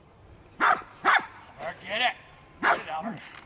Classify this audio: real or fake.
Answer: fake